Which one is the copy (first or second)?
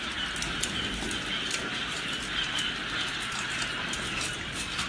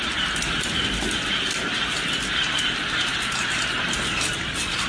second